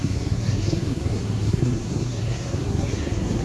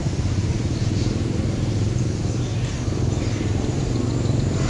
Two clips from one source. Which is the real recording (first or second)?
second